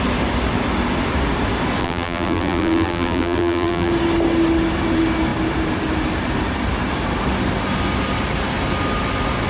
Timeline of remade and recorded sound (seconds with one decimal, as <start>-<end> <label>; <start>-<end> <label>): 0.0-1.8 recorded; 1.8-3.9 remade; 3.9-9.5 recorded